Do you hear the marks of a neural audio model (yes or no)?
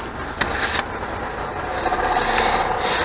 no